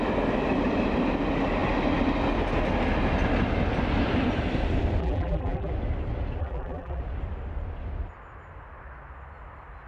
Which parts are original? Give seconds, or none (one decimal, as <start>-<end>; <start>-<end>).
0.0-5.0; 5.7-6.4; 7.0-9.9